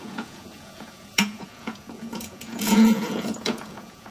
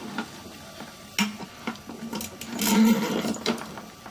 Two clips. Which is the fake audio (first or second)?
first